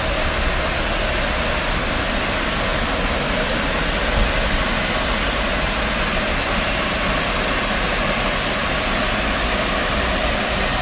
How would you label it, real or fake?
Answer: real